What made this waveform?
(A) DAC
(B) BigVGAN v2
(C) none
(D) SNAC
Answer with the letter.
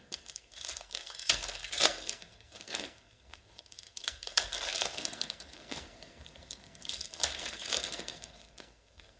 D